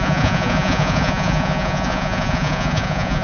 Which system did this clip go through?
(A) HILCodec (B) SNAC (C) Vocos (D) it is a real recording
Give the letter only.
C